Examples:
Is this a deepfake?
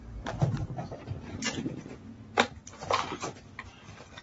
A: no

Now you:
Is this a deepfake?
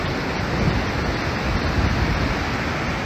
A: no